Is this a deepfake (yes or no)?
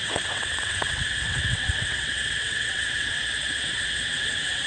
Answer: yes